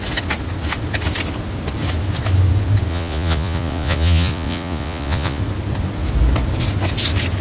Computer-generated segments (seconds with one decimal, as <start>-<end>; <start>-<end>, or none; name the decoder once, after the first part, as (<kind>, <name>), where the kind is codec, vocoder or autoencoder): 2.9-5.4 (vocoder, Vocos)